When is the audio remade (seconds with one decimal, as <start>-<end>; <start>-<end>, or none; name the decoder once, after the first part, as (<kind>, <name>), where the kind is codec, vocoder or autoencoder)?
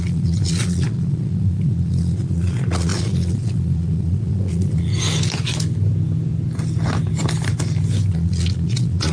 0.0-4.9 (vocoder, Vocos); 8.1-9.1